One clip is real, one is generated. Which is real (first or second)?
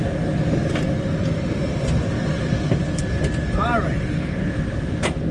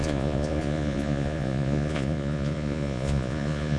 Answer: first